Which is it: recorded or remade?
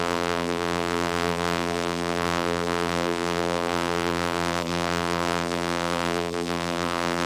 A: remade